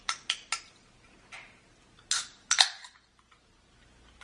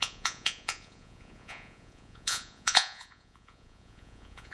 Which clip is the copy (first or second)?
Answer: second